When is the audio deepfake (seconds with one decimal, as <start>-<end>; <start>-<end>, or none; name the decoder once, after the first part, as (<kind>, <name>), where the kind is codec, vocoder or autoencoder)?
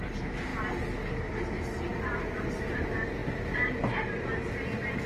1.9-2.5 (vocoder, BigVGAN v2)